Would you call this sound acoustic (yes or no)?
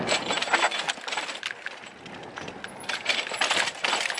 yes